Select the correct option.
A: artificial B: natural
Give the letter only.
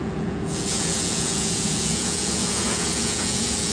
A